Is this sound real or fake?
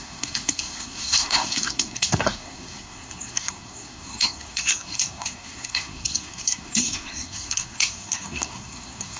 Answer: fake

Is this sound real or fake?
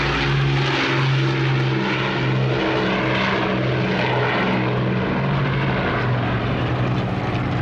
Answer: real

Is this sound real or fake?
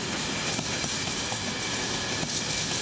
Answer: real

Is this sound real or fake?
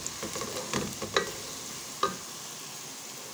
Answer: real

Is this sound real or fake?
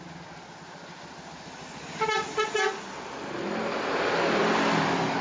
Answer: real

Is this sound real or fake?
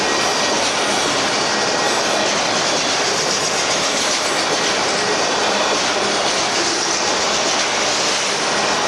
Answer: real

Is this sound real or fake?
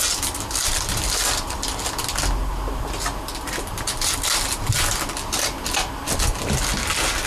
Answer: real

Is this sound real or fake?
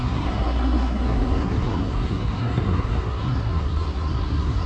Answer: fake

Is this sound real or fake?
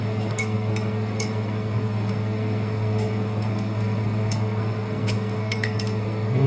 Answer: fake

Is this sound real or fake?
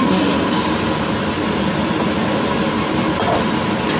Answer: real